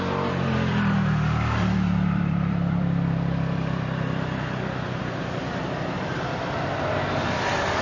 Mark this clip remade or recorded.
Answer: remade